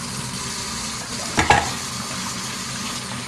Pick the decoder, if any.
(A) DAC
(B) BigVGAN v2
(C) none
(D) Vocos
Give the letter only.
C